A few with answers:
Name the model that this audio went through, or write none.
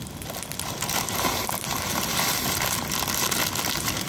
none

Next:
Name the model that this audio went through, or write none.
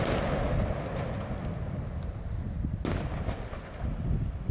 none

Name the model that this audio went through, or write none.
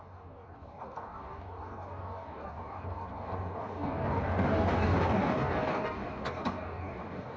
codec, DAC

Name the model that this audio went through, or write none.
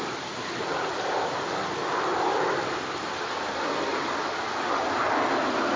none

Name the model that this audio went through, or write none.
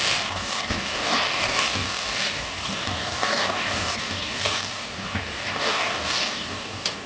codec, DAC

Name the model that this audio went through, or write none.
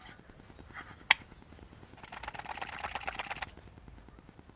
none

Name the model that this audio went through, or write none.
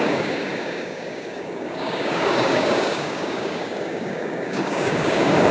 codec, DAC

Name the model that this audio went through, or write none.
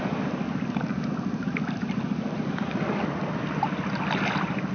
none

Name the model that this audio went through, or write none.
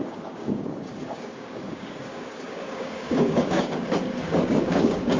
codec, DAC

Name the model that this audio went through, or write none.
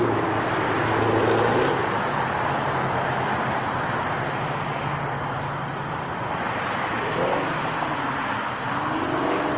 none